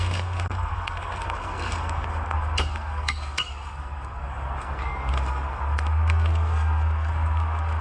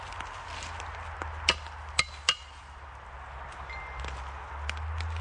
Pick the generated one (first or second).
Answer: first